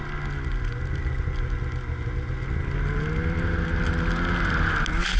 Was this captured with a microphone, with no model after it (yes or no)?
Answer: yes